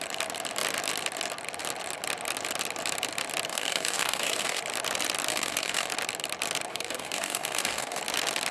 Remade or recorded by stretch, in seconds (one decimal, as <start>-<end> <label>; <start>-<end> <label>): 0.0-3.5 recorded; 3.5-4.6 remade; 4.6-5.3 recorded; 5.3-5.9 remade; 5.9-6.7 recorded; 6.7-8.0 remade; 8.0-8.5 recorded